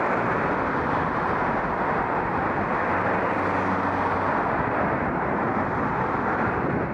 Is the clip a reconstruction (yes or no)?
no